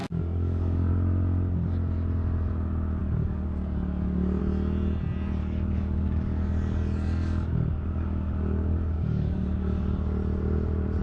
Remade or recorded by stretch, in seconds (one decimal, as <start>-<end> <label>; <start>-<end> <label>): 0.0-0.9 remade; 0.9-3.0 recorded; 3.0-4.4 remade; 4.4-5.4 recorded; 5.4-9.9 remade; 9.9-11.0 recorded